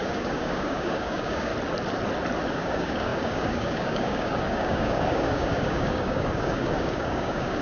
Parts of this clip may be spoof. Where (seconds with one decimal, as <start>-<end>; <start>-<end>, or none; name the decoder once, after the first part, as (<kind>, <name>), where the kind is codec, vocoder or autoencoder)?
0.0-1.5 (codec, DAC); 2.5-7.6

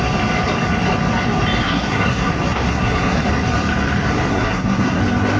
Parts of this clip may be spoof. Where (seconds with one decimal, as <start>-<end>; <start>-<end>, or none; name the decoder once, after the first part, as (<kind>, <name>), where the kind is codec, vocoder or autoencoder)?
1.6-2.3 (codec, SNAC); 2.7-3.3; 4.3-5.0

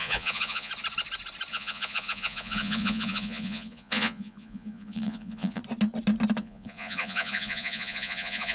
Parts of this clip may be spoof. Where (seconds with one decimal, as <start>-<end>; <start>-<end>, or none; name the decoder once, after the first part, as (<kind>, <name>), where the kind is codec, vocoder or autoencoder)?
0.0-0.7 (vocoder, Vocos); 1.5-5.6; 6.4-8.5

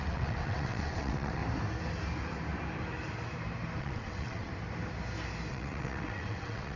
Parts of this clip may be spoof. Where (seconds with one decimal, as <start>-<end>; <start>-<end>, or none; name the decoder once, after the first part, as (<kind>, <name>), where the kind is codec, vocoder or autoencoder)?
0.0-1.4 (vocoder, WaveNeXt); 3.8-4.5; 5.5-6.8

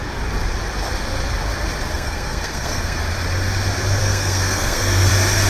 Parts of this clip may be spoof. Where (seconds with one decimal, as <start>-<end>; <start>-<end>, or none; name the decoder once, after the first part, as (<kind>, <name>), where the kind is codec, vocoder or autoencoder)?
1.9-3.0 (codec, SNAC); 4.0-5.1

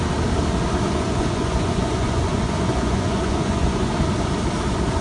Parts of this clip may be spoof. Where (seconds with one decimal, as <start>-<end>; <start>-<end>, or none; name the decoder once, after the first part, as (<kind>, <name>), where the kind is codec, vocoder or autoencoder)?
0.9-3.9 (vocoder, Vocos)

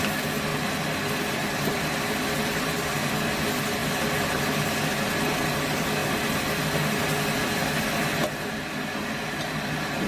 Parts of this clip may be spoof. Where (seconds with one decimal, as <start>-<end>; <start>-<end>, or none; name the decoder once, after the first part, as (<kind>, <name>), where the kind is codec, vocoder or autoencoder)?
none

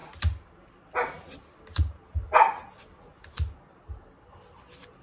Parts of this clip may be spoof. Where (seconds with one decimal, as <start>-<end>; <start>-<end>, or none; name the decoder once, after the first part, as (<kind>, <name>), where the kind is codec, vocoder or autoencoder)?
none